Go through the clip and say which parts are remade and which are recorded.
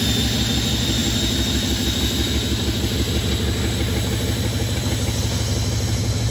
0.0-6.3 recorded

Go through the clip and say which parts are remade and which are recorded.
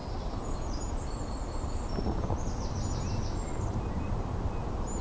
0.0-1.9 remade; 1.9-5.0 recorded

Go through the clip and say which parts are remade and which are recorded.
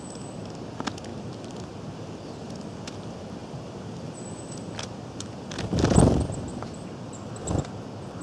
0.0-1.1 recorded; 1.1-1.6 remade; 1.6-3.4 recorded; 3.4-5.7 remade; 5.7-6.5 recorded; 6.5-7.7 remade; 7.7-8.2 recorded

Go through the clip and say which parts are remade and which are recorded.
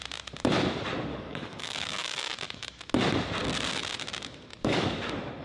0.0-1.1 recorded; 1.1-2.8 remade; 2.8-4.5 recorded; 4.5-5.0 remade; 5.0-5.4 recorded